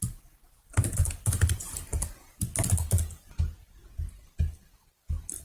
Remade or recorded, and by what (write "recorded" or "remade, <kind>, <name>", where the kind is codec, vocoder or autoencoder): recorded